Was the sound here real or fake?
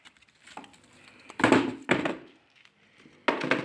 real